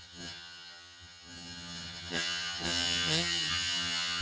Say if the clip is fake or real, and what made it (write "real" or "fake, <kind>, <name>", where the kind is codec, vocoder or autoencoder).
fake, vocoder, HiFi-GAN